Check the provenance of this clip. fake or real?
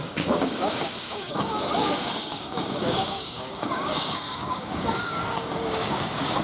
fake